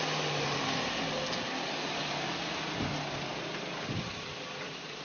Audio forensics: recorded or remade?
recorded